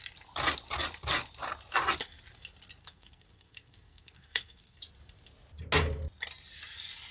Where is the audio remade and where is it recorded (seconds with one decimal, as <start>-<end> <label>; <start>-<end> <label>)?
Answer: 0.0-2.8 recorded; 2.8-4.8 remade; 4.8-7.1 recorded